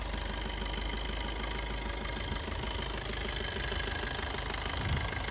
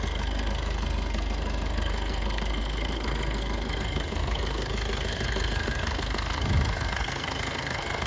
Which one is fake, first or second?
second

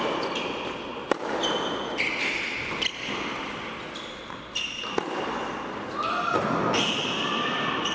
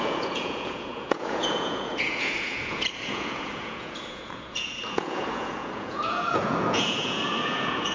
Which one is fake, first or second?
second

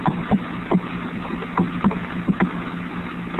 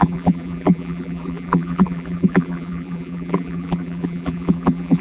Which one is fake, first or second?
second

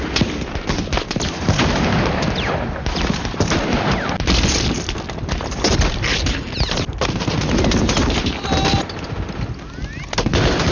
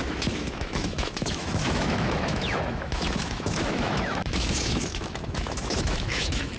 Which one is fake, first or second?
second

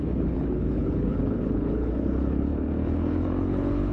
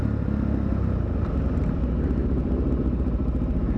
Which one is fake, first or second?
first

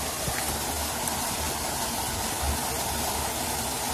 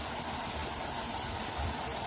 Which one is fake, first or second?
second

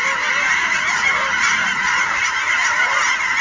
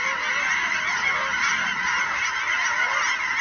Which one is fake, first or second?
first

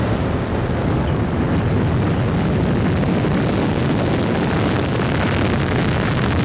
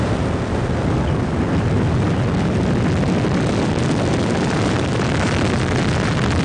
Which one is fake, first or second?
second